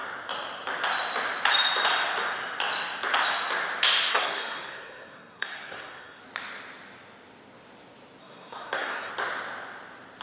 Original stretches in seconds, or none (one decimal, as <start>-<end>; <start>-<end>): 0.0-4.1; 6.2-8.2; 9.1-10.2